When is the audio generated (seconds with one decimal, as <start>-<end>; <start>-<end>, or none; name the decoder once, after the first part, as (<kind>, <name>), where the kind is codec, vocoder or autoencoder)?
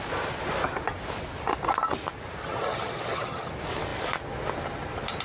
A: 2.4-3.5 (vocoder, HiFi-GAN)